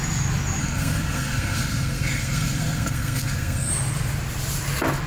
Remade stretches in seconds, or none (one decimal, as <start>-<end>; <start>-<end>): 0.6-3.7